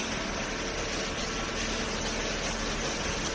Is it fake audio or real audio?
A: real